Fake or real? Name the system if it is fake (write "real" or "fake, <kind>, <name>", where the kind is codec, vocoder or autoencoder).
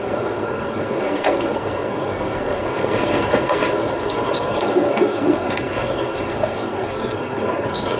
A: fake, codec, SNAC